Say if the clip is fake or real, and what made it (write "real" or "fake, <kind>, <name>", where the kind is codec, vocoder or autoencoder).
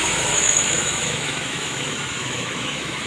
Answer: fake, autoencoder, DAC-VAE